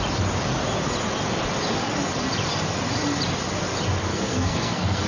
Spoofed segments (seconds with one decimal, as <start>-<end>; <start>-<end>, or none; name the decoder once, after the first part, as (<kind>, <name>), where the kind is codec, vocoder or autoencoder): 4.1-5.1 (codec, SNAC)